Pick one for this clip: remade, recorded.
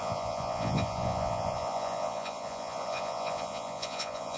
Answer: remade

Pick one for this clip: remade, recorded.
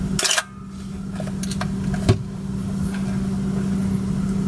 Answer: recorded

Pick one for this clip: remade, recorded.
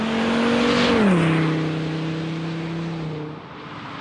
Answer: recorded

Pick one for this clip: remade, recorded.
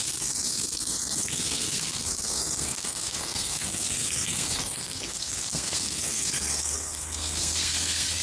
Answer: remade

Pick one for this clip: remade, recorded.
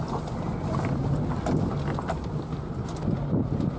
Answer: recorded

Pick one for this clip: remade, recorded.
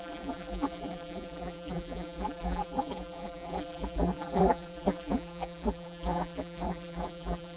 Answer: remade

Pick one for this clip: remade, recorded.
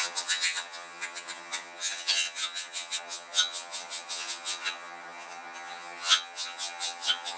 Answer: remade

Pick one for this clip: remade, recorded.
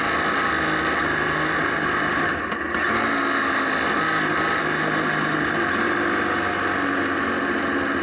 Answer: recorded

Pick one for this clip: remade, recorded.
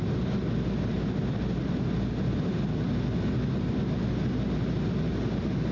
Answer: recorded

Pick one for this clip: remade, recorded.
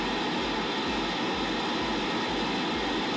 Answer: recorded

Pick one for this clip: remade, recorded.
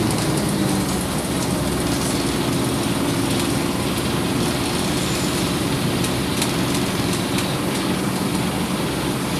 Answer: recorded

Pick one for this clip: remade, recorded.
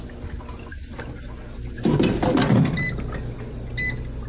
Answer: recorded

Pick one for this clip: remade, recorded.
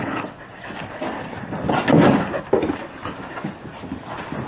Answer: recorded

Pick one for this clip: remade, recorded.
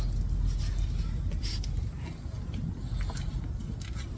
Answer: recorded